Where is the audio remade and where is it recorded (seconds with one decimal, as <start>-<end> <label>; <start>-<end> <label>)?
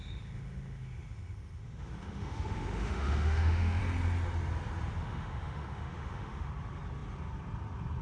0.0-3.8 remade; 3.8-5.0 recorded; 5.0-6.5 remade; 6.5-8.0 recorded